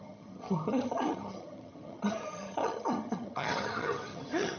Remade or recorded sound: remade